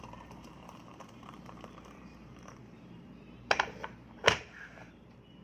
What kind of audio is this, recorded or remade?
remade